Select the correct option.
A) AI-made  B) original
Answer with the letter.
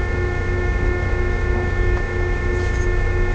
A